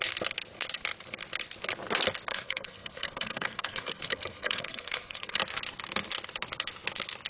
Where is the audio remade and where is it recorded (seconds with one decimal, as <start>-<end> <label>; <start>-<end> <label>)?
0.0-2.3 recorded; 2.3-5.4 remade; 5.4-7.3 recorded